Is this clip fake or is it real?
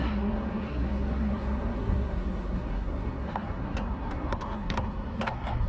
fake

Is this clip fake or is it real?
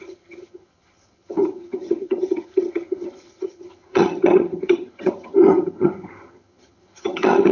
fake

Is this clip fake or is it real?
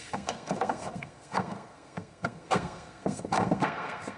fake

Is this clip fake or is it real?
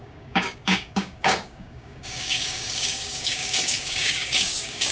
fake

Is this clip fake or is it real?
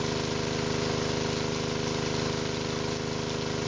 real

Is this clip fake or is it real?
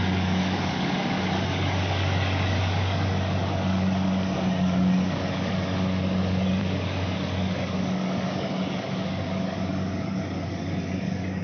fake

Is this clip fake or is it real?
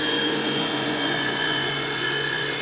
fake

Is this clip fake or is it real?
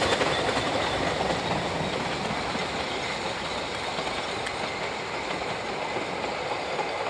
real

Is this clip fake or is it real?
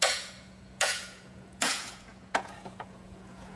fake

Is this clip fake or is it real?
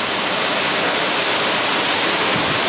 real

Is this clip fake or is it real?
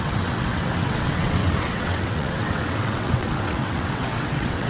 fake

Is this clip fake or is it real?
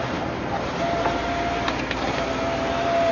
real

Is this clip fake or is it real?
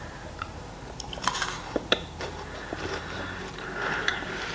fake